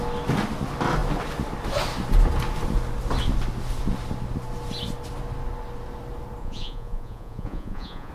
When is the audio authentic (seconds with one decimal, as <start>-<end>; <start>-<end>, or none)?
0.0-6.4